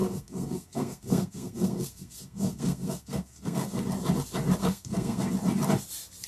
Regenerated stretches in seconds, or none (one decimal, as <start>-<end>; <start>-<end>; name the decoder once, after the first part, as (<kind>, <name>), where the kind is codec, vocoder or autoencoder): 0.0-3.8 (codec, SNAC); 4.6-5.3